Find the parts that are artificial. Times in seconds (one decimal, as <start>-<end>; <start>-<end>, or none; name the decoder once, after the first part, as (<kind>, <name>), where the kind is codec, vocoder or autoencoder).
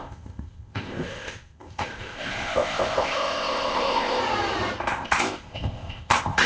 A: 0.0-4.2 (codec, ZipCodec); 4.9-6.5